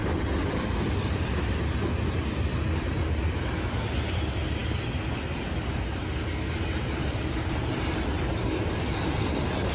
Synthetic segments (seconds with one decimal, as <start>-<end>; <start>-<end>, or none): 0.0-1.5; 7.0-9.0